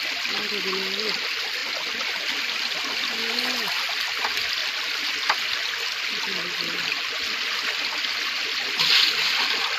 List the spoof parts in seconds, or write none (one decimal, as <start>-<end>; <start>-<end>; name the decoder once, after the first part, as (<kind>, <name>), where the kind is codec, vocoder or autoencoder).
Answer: 1.6-2.2 (vocoder, BigVGAN v2)

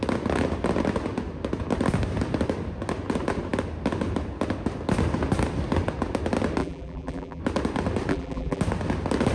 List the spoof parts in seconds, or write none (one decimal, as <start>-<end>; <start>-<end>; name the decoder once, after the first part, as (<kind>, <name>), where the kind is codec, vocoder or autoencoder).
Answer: 6.6-7.4 (vocoder, BigVGAN v2); 8.1-8.6

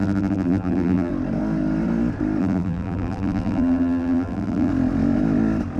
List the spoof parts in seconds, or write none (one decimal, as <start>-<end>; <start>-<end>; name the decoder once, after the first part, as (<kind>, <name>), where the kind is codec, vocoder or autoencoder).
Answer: 0.0-1.1 (vocoder, BigVGAN v2); 2.4-4.7

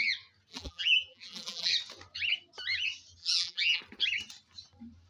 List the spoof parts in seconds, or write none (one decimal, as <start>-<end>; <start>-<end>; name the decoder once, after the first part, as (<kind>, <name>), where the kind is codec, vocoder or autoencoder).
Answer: 0.5-1.7 (vocoder, BigVGAN v2); 3.2-3.8

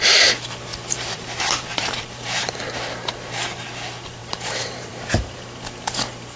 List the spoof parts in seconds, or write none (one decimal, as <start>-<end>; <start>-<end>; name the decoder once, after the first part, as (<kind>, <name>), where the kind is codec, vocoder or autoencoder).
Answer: 0.7-2.6 (vocoder, BigVGAN v2); 4.2-5.4

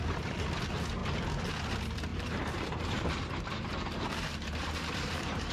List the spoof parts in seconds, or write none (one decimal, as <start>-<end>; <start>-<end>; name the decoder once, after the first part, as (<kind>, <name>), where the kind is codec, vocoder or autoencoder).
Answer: 2.1-5.5 (vocoder, BigVGAN v2)